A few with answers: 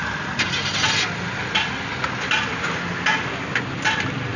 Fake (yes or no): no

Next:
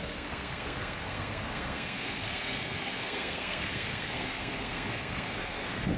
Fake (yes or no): yes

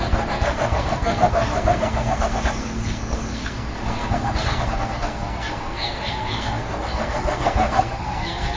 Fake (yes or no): yes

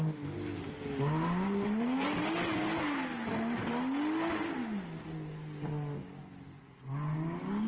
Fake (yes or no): no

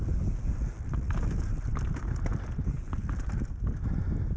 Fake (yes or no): no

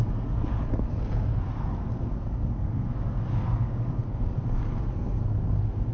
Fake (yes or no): yes